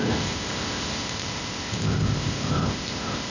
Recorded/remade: remade